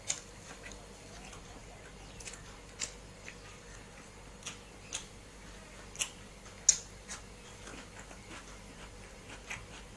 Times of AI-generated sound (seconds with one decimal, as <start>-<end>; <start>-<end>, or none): none